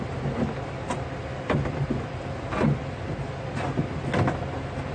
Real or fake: real